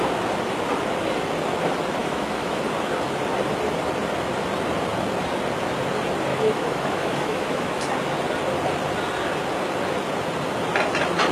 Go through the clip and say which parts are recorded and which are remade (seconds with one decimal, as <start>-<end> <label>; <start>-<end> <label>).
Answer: 0.0-2.0 recorded; 2.0-2.6 remade; 2.6-6.3 recorded; 6.3-7.8 remade; 7.8-11.3 recorded